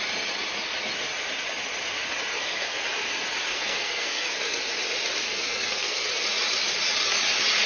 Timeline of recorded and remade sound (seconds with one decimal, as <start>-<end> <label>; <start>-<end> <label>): 0.0-2.3 recorded; 2.3-2.8 remade; 2.8-3.5 recorded; 3.5-4.6 remade; 4.6-5.2 recorded; 5.2-6.1 remade; 6.1-7.7 recorded

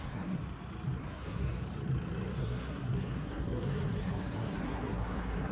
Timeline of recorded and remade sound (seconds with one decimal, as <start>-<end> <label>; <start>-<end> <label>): 0.0-0.4 remade; 0.4-1.0 recorded; 1.0-1.5 remade; 1.5-2.4 recorded; 2.4-5.5 remade

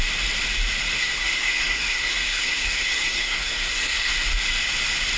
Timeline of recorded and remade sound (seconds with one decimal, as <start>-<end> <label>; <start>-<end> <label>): 0.0-1.0 recorded; 1.0-4.1 remade; 4.1-5.2 recorded

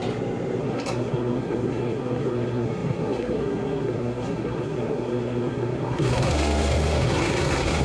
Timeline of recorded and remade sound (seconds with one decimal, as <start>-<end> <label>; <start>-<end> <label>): 0.0-0.6 recorded; 0.6-7.8 remade

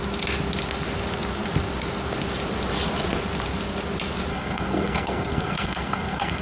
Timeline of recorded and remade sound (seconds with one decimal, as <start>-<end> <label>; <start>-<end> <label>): 0.0-4.3 recorded; 4.3-6.4 remade

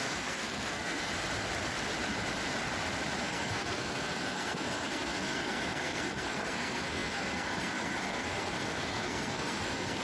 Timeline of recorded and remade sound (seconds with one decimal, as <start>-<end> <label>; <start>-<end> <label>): 0.0-1.1 remade; 1.1-3.2 recorded; 3.2-10.0 remade

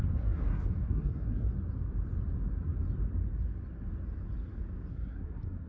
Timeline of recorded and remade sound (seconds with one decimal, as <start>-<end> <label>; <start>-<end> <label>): 0.0-1.5 remade; 1.5-4.9 recorded; 4.9-5.7 remade

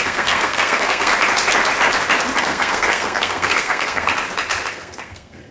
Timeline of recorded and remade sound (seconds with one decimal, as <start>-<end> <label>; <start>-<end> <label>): 0.0-1.1 remade; 1.1-2.4 recorded; 2.4-4.1 remade; 4.1-4.7 recorded; 4.7-5.5 remade